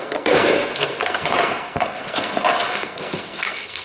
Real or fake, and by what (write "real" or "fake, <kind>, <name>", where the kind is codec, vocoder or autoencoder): fake, codec, SNAC